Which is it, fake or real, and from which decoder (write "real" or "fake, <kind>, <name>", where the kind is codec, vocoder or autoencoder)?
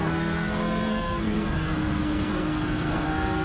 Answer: fake, codec, SNAC